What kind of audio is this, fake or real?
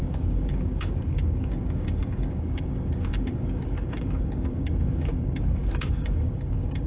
fake